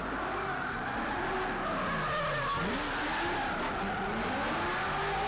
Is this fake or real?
real